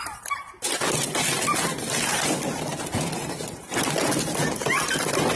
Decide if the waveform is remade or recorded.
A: recorded